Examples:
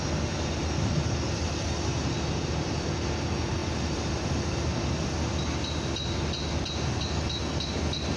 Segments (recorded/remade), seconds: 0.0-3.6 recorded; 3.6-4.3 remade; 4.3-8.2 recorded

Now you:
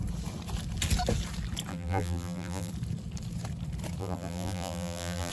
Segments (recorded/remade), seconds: 0.0-1.7 recorded; 1.7-2.7 remade; 2.7-4.0 recorded; 4.0-5.3 remade

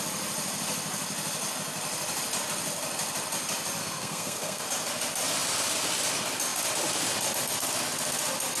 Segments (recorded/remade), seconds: 0.0-3.8 recorded; 3.8-4.6 remade; 4.6-8.6 recorded

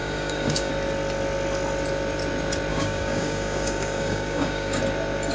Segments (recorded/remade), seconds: 0.0-0.7 remade; 0.7-2.7 recorded; 2.7-4.8 remade; 4.8-5.3 recorded

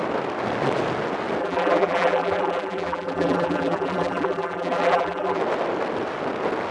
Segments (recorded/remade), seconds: 0.0-1.4 recorded; 1.4-5.4 remade; 5.4-6.7 recorded

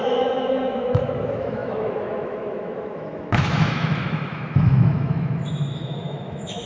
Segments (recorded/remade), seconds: 0.0-6.7 remade

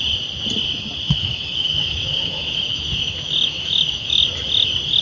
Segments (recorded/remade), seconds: 0.0-1.2 recorded; 1.2-4.2 remade; 4.2-5.0 recorded